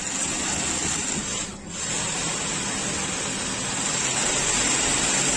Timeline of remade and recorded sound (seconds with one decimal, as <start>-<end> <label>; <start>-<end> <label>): 0.0-5.4 recorded

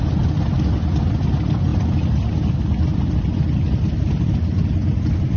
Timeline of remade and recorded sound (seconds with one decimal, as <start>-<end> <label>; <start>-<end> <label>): 0.0-2.9 recorded; 2.9-4.1 remade; 4.1-5.4 recorded

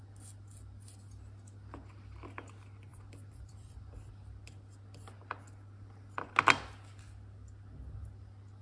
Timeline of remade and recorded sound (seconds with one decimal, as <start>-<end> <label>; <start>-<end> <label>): 0.0-2.9 recorded; 2.9-3.9 remade; 3.9-8.6 recorded

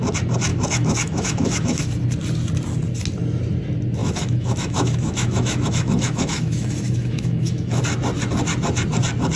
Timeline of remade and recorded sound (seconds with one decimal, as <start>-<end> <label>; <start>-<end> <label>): 0.0-0.5 recorded; 0.5-1.8 remade; 1.8-4.0 recorded; 4.0-7.8 remade; 7.8-9.4 recorded